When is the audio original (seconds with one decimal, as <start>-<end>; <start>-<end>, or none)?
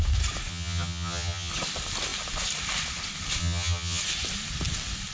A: 0.0-0.5; 1.5-3.4; 4.0-5.1